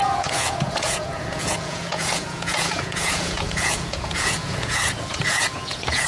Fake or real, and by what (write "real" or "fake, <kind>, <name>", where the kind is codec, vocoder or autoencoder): fake, vocoder, Vocos